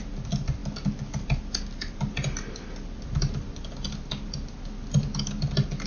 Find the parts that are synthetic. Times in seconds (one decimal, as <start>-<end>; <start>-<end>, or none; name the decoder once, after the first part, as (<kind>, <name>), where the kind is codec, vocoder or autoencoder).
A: none